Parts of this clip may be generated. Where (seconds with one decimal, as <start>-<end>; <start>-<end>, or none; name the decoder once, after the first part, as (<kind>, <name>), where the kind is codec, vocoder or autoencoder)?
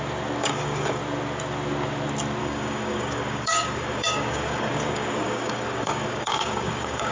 0.4-1.0 (codec, DAC); 2.4-7.1